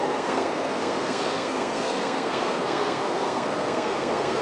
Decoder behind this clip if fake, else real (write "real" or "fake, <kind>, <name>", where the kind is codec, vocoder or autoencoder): fake, codec, SNAC